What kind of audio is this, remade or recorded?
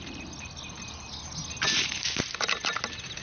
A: recorded